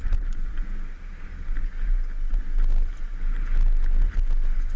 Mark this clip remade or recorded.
recorded